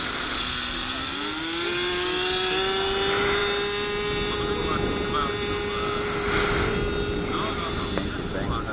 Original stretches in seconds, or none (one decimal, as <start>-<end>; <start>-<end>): 0.0-8.7